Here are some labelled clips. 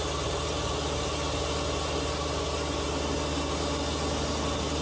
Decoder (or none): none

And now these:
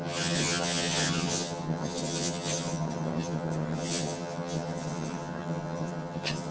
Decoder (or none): vocoder, HiFi-GAN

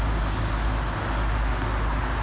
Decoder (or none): none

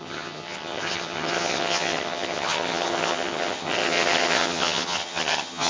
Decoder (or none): vocoder, HiFi-GAN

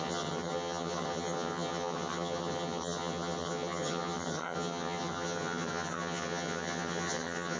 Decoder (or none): vocoder, HiFi-GAN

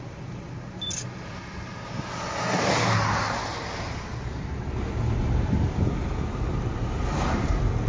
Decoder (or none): none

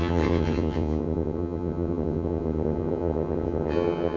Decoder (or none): vocoder, HiFi-GAN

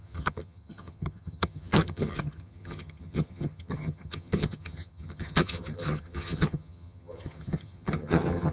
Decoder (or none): vocoder, HiFi-GAN